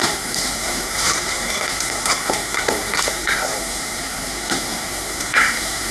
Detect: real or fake fake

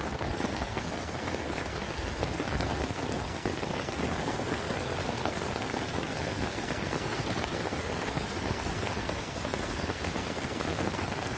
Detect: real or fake fake